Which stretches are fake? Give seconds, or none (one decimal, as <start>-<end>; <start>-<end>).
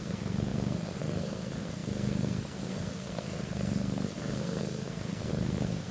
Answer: 0.0-5.9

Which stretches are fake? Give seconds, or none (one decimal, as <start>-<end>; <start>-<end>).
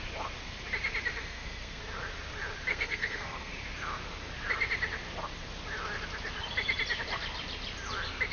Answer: 1.2-1.8; 2.7-3.5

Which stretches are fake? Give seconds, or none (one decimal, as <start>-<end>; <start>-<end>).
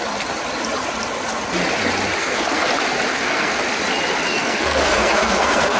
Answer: 2.2-2.7; 3.1-3.6; 4.3-5.8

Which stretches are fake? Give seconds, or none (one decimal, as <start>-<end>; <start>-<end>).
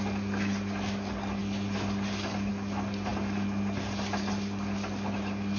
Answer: none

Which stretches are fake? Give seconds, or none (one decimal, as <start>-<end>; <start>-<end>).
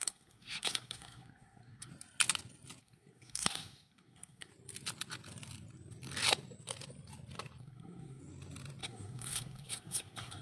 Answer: 0.0-1.9; 2.8-4.5; 7.6-8.2; 8.8-10.4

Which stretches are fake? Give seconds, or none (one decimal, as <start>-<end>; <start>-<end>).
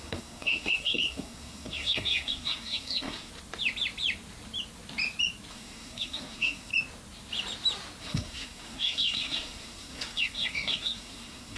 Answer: 0.0-3.3; 5.5-6.7; 8.0-11.6